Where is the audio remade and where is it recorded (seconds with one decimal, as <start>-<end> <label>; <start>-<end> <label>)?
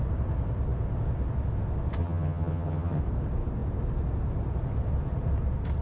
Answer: 0.0-2.0 recorded; 2.0-3.0 remade; 3.0-5.8 recorded